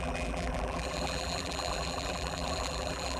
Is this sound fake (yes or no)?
yes